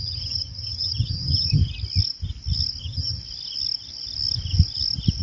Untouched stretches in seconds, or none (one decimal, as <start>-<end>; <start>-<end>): 1.6-2.8; 3.2-5.2